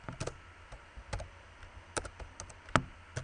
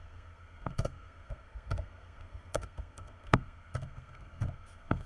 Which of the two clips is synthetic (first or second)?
second